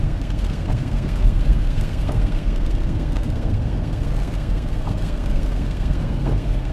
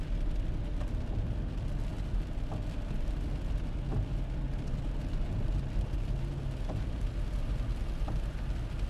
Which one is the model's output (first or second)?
first